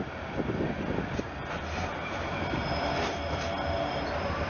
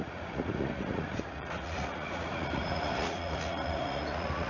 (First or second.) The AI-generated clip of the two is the second